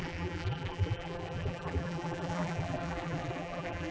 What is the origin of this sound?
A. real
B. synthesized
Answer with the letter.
B